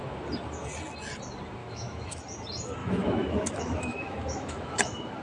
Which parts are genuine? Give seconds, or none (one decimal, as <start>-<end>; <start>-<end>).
0.0-1.6; 2.2-2.8